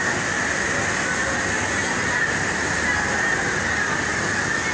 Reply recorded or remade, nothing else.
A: recorded